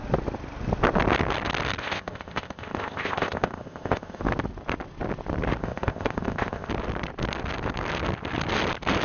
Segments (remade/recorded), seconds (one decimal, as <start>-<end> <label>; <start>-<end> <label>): 0.0-1.8 recorded; 1.8-4.2 remade; 4.2-5.6 recorded; 5.6-6.7 remade; 6.7-9.0 recorded